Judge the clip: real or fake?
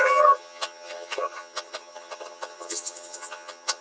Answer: fake